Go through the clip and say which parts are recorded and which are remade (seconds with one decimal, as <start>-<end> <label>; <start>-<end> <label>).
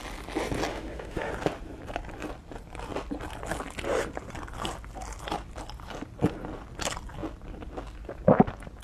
0.0-0.7 recorded; 0.7-1.3 remade; 1.3-8.8 recorded